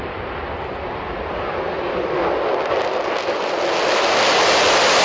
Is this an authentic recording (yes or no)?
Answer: yes